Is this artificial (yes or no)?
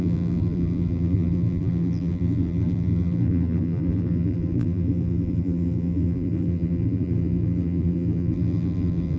yes